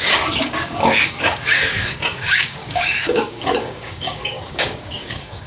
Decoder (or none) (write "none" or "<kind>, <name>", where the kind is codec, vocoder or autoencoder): codec, DAC